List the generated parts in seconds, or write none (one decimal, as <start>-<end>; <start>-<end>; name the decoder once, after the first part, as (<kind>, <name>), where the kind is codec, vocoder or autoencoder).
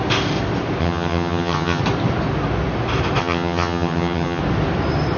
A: 0.8-1.8 (vocoder, HiFi-GAN); 3.2-4.4